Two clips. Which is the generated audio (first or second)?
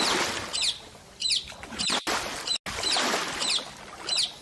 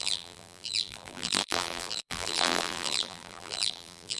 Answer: second